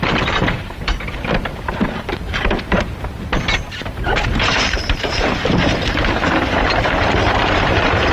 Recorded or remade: remade